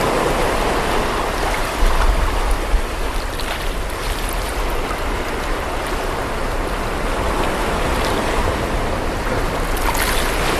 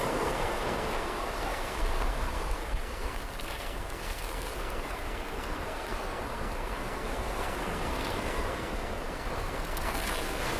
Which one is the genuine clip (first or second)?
first